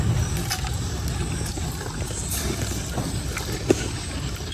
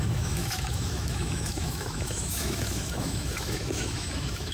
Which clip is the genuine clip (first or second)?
first